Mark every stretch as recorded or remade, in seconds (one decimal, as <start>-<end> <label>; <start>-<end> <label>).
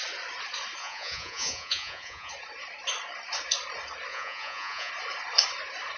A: 0.0-0.8 recorded; 0.8-2.3 remade; 2.3-4.1 recorded; 4.1-4.9 remade; 4.9-6.0 recorded